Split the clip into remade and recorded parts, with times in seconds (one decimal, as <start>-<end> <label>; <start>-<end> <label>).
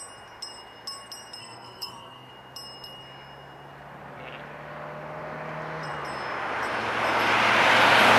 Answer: 0.0-1.4 recorded; 1.4-2.3 remade; 2.3-8.2 recorded